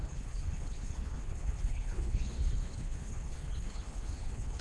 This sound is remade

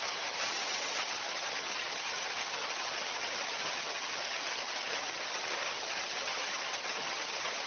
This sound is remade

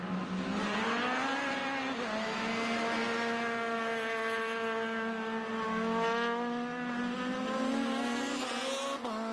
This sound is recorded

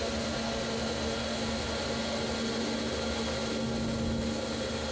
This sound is recorded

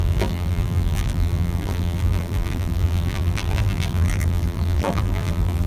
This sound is remade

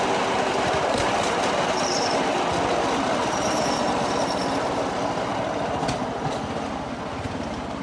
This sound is recorded